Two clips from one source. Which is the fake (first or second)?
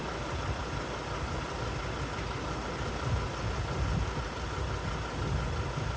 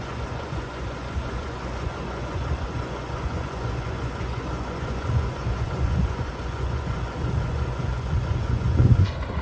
second